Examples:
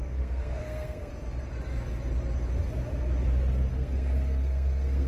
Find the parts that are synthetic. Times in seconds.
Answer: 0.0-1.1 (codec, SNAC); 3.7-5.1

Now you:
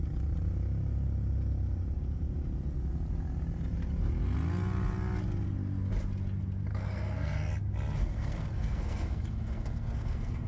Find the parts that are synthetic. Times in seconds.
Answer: 6.7-7.5 (codec, SNAC); 8.0-10.5

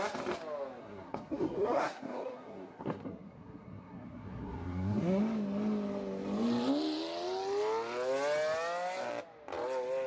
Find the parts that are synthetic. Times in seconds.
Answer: 0.8-5.2 (codec, SNAC)

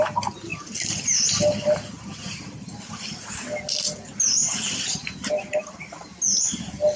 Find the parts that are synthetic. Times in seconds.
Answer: none